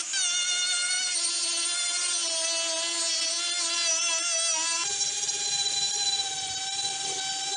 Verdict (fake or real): real